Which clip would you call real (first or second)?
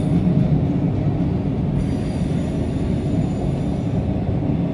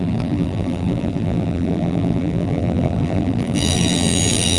first